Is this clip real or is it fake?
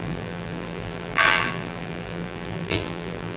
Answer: fake